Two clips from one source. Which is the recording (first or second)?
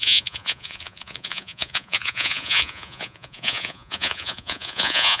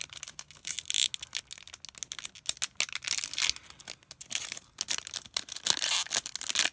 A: second